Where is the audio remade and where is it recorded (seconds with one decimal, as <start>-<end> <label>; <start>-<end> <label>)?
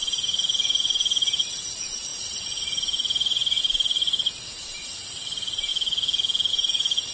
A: 0.0-5.7 remade; 5.7-6.5 recorded; 6.5-7.1 remade